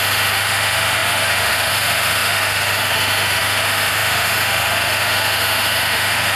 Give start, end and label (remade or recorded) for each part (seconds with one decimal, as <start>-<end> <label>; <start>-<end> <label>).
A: 0.0-6.4 remade